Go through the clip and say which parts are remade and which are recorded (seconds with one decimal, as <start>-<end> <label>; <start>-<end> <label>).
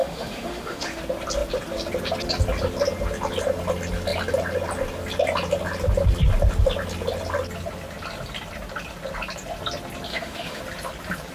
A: 0.0-1.0 remade; 1.0-10.1 recorded; 10.1-10.6 remade; 10.6-11.3 recorded